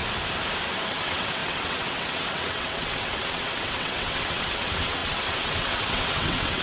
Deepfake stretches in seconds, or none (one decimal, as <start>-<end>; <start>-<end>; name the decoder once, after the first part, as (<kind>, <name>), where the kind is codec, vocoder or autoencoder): 0.9-6.6 (vocoder, WaveNeXt)